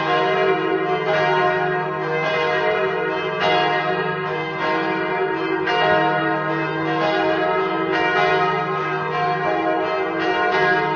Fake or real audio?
real